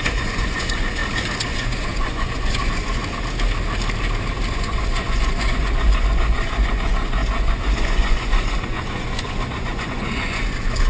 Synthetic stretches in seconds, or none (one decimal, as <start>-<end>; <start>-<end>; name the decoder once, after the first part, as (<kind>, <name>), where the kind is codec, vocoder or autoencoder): 0.0-1.0 (vocoder, Vocos); 1.5-3.0; 4.5-10.9